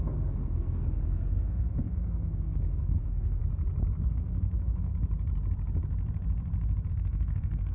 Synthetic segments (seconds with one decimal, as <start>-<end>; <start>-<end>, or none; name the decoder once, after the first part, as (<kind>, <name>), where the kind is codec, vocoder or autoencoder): 0.0-3.4 (codec, SNAC); 4.1-4.9; 6.9-7.7